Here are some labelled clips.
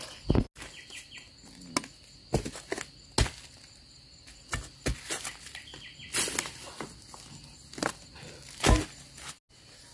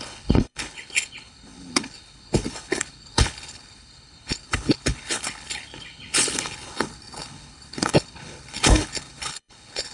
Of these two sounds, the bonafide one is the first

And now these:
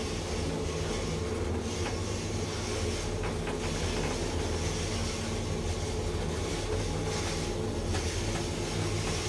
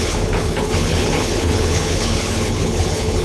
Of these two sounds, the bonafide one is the first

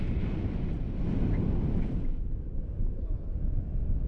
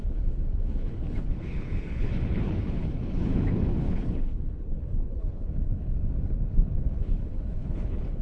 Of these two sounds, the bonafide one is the first